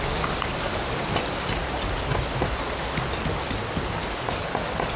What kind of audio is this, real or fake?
real